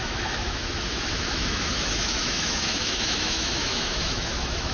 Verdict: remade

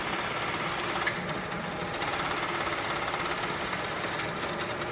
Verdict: recorded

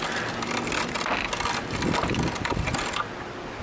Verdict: recorded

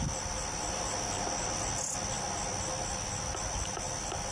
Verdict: recorded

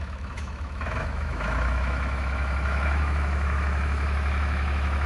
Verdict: remade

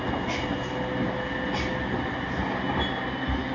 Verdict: recorded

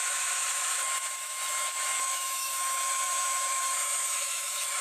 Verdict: remade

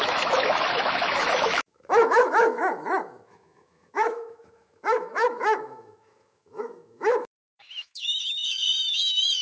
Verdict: remade